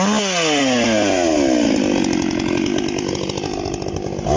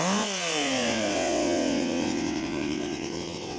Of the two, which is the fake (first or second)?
second